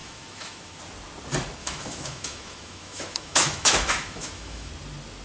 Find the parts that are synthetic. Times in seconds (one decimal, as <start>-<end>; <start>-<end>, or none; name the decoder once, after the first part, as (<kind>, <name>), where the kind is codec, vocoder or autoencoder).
0.0-0.8 (autoencoder, DAC-VAE); 1.6-4.7